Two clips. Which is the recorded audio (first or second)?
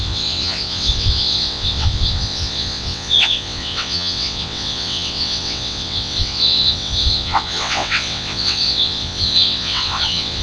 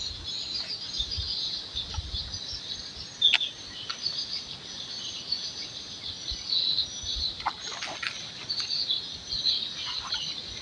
second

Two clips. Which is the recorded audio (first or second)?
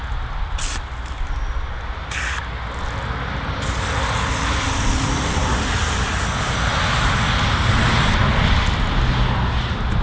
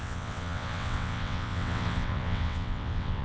first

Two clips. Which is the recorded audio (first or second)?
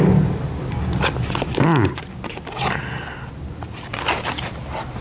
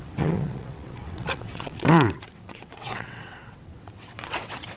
first